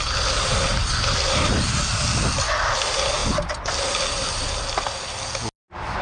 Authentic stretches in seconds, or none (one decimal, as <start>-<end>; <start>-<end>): 0.0-6.0